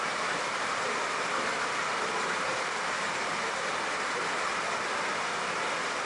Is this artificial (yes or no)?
no